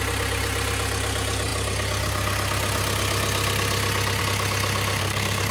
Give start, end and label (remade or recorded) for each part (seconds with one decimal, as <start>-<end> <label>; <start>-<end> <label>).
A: 0.0-5.0 recorded; 5.0-5.5 remade